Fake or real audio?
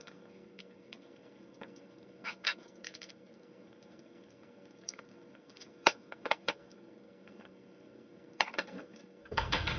fake